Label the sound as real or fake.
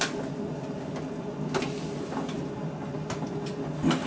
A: real